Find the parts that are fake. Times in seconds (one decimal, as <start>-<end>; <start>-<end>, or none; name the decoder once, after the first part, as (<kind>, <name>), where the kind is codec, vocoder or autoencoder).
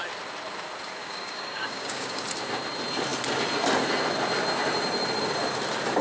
1.0-2.2 (codec, DAC)